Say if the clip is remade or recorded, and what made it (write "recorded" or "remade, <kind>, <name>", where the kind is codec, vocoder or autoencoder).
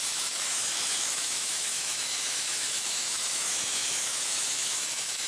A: remade, autoencoder, DAC-VAE